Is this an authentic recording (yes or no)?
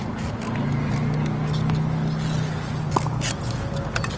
yes